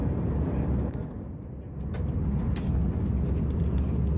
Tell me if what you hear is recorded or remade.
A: recorded